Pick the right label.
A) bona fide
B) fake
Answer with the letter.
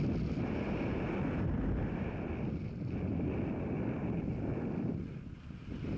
A